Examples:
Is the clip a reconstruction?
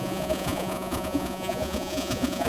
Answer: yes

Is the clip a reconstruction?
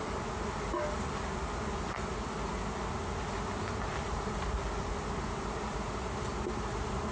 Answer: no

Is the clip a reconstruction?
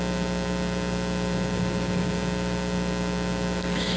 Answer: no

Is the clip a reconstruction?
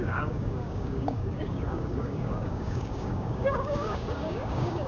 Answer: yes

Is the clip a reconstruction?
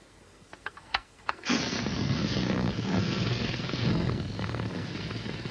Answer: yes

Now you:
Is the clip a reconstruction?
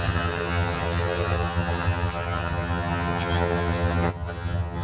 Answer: yes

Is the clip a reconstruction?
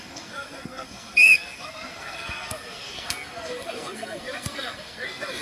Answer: yes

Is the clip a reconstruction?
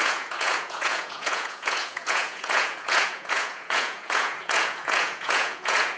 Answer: yes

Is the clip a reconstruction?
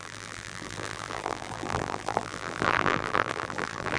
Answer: yes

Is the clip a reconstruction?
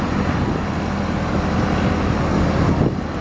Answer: no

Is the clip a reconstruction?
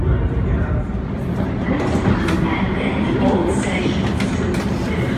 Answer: no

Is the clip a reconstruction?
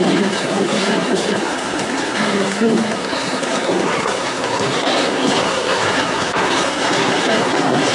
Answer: yes